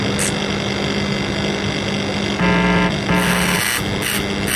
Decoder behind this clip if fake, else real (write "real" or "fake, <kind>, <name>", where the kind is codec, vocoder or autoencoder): real